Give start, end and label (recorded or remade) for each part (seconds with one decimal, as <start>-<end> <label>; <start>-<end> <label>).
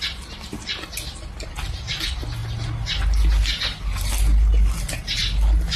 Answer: 0.0-5.8 recorded